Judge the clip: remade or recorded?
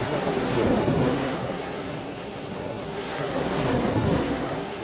remade